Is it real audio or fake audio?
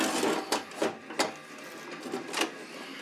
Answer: real